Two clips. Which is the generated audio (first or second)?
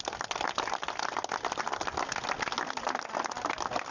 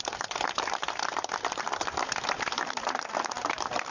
second